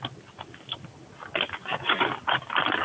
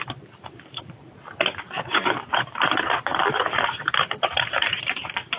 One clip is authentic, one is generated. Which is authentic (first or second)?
first